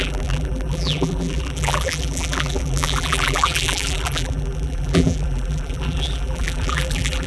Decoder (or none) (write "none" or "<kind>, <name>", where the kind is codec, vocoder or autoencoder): vocoder, BigVGAN v2